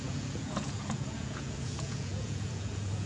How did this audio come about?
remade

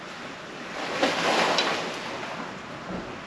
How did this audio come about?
recorded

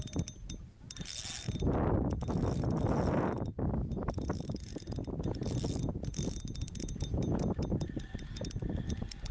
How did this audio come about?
recorded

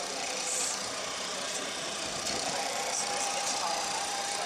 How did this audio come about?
remade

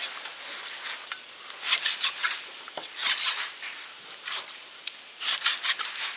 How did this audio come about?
recorded